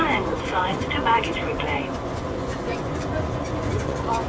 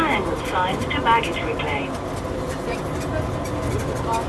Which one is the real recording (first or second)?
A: second